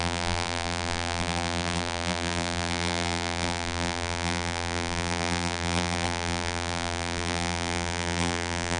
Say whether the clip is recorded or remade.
remade